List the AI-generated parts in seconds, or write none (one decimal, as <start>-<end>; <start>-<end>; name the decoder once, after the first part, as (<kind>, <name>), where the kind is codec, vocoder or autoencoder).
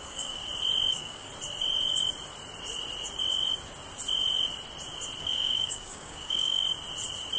0.0-0.4 (codec, DAC); 0.9-1.3; 5.2-6.6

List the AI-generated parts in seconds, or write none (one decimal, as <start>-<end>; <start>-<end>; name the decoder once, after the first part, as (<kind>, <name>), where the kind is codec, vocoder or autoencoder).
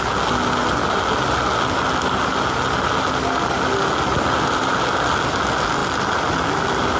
none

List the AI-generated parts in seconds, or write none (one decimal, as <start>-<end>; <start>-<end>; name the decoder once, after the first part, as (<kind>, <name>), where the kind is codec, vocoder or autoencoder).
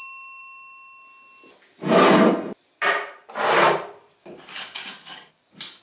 4.2-5.8 (codec, DAC)